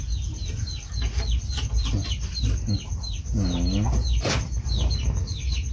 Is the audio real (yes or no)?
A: yes